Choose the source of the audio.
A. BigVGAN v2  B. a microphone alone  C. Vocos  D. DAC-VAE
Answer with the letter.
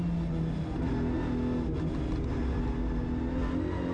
B